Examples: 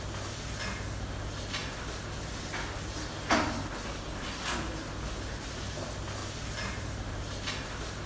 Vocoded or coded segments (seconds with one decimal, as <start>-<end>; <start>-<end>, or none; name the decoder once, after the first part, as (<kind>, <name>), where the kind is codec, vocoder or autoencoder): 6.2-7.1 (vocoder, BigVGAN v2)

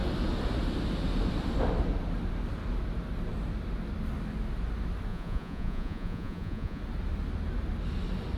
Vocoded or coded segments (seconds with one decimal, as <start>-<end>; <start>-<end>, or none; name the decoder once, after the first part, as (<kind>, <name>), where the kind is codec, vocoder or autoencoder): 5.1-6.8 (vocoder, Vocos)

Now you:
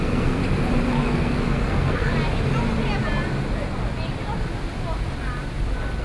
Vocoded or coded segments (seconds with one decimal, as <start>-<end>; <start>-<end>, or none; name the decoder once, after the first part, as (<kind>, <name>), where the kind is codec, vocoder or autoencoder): 0.0-0.4 (codec, SNAC); 0.9-2.1